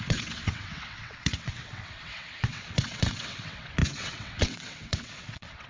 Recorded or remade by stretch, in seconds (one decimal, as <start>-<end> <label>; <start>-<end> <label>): 0.0-5.7 remade